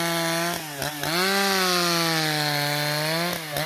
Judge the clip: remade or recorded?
recorded